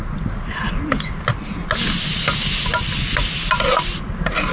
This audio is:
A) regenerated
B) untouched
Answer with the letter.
B